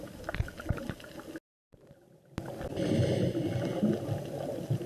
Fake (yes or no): no